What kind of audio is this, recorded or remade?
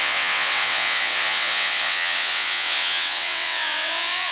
remade